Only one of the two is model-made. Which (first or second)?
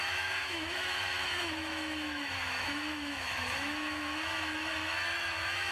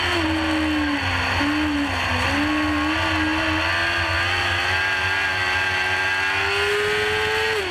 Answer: first